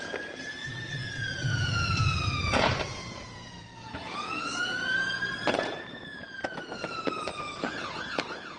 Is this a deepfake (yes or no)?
yes